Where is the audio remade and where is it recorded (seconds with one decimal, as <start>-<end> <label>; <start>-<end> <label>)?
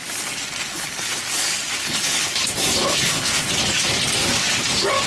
0.0-0.7 recorded; 0.7-1.2 remade; 1.2-1.8 recorded; 1.8-2.3 remade; 2.3-2.8 recorded; 2.8-3.5 remade; 3.5-5.1 recorded